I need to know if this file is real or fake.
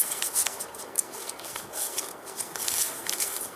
fake